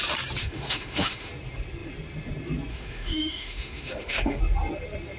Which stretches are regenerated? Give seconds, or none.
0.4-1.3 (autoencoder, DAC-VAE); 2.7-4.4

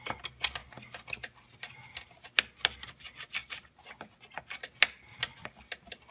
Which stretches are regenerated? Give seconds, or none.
none

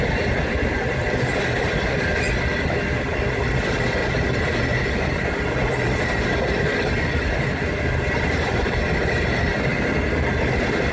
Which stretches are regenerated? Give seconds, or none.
4.0-8.7 (vocoder, BigVGAN v2)

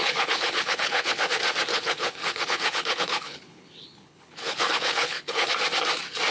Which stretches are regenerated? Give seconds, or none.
0.0-1.2 (codec, HILCodec); 1.7-5.5

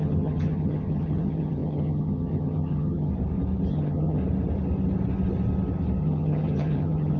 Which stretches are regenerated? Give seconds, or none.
0.0-3.1 (vocoder, HiFi-GAN); 3.7-4.2; 6.0-7.2